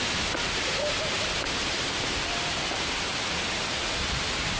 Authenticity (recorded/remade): recorded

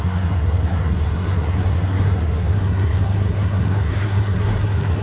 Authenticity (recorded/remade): remade